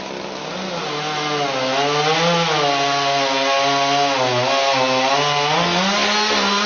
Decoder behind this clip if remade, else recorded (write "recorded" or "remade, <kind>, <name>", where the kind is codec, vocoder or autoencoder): recorded